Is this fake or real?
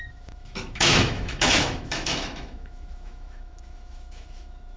fake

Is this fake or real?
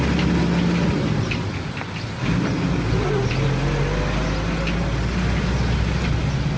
real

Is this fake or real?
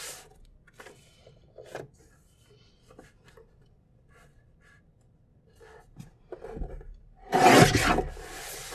real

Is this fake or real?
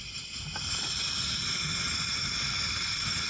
real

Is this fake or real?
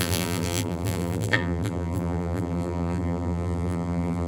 fake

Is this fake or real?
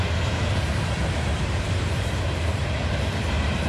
fake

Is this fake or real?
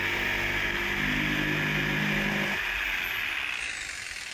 real